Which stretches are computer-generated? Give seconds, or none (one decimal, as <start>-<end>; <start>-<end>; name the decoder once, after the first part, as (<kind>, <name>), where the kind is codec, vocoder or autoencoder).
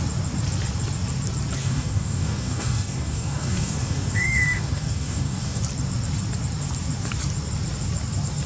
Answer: 1.6-5.6 (codec, DAC)